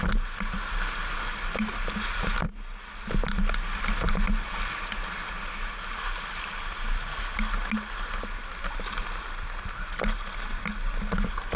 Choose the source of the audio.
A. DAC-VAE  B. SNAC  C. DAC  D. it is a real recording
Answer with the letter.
D